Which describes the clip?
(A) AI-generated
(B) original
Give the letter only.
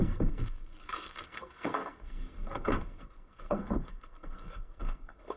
A